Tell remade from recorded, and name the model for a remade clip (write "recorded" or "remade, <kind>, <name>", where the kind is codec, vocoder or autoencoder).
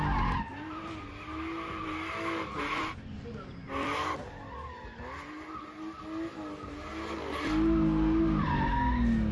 recorded